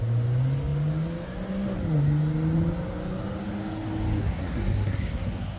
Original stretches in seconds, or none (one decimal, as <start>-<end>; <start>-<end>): 0.0-4.2